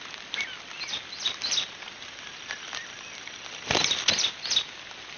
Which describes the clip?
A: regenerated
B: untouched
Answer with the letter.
B